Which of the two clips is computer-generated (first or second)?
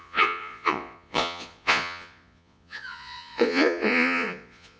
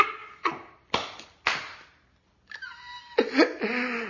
first